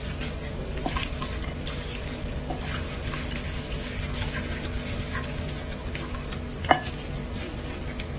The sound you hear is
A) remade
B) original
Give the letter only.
B